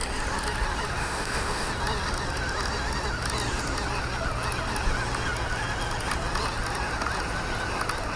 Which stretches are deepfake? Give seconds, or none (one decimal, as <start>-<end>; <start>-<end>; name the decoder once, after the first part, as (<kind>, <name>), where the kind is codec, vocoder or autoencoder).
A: 1.0-1.7 (autoencoder, DAC-VAE)